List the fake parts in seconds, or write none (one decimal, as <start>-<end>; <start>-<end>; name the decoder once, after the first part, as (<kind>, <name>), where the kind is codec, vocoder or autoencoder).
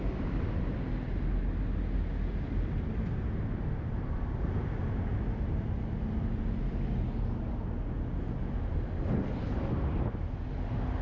none